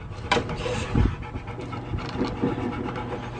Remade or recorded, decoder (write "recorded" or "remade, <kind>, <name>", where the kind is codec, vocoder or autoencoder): recorded